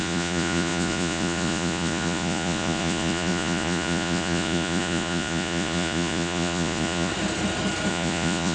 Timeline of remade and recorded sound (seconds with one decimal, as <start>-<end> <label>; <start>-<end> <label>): 0.0-7.1 remade; 7.1-7.9 recorded; 7.9-8.5 remade